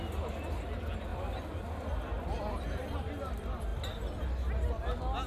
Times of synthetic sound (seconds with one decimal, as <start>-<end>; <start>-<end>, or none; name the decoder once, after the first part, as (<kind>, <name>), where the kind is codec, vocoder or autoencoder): none